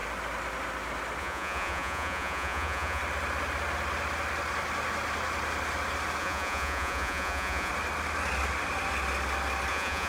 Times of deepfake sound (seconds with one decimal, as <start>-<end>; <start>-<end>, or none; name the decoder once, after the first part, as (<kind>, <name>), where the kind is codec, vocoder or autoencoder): 1.2-3.0 (vocoder, Vocos); 6.2-7.7; 9.7-10.1